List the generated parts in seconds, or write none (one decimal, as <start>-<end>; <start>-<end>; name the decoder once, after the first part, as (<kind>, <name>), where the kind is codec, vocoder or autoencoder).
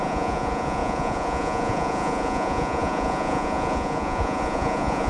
0.0-5.1 (vocoder, Vocos)